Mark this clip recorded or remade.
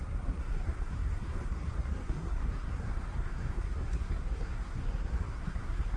remade